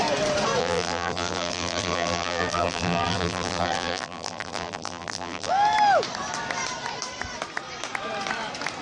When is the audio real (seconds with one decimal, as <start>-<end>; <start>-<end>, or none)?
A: 0.0-0.6; 5.5-8.8